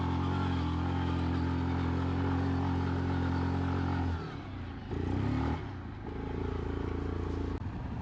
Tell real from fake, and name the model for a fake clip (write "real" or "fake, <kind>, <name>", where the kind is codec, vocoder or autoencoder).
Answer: real